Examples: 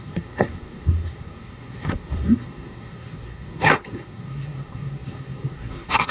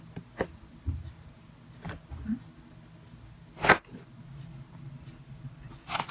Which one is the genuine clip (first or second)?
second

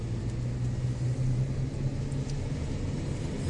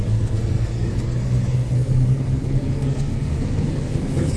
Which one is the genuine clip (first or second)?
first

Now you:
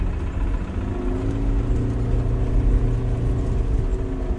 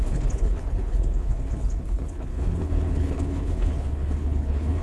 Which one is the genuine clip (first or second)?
first